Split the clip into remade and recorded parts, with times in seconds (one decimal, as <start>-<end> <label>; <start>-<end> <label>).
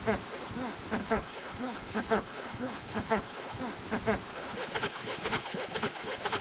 0.0-1.0 recorded; 1.0-3.6 remade; 3.6-4.3 recorded; 4.3-6.4 remade